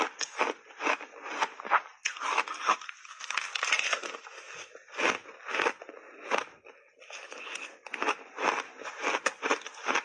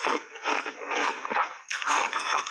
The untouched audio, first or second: first